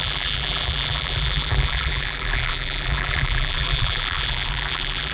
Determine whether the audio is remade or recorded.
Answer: remade